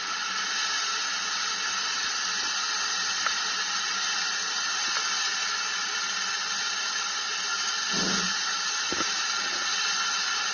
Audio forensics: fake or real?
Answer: real